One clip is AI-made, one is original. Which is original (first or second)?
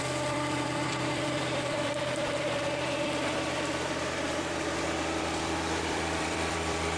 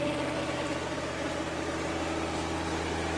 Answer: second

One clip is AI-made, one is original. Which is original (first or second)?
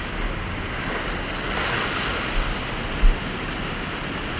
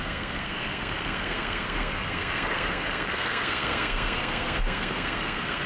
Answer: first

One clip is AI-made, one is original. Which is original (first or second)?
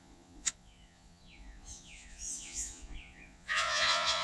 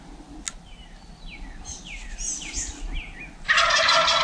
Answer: second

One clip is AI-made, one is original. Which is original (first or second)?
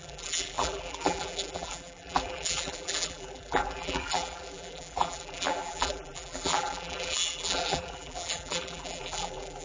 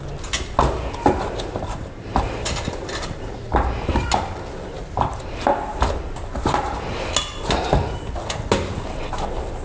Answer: second